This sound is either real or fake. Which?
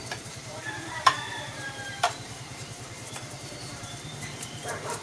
fake